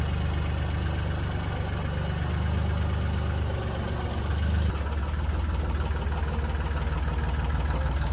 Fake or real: real